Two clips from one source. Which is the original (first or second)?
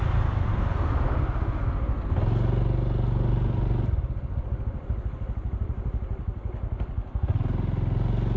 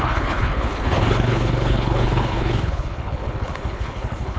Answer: first